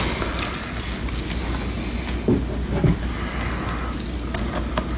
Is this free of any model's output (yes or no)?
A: yes